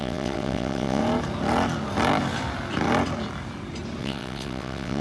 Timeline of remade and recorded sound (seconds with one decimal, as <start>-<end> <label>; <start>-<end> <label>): 0.0-1.0 remade; 1.0-4.0 recorded; 4.0-5.0 remade